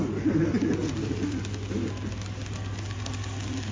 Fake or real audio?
real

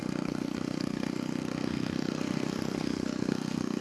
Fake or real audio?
fake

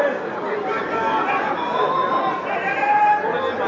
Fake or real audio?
real